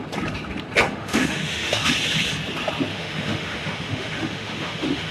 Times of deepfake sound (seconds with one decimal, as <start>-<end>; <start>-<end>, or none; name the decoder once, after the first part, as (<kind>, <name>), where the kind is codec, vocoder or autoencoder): 0.9-1.9 (autoencoder, DAC-VAE); 2.9-5.1